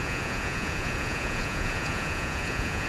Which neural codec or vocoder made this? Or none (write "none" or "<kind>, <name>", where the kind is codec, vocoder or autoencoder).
vocoder, Vocos